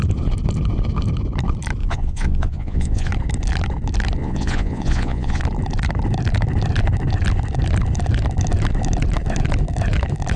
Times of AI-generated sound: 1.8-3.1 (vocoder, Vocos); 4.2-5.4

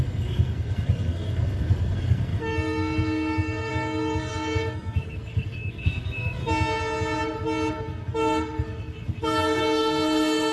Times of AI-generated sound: 0.0-6.4 (codec, SNAC); 7.7-10.5

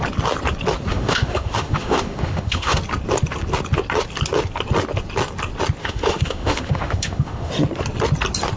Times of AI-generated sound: 0.9-2.8 (autoencoder, DAC-VAE); 5.8-7.5

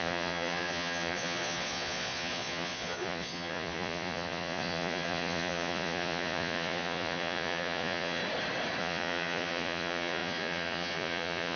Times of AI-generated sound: 0.0-8.2 (vocoder, Vocos); 8.8-11.6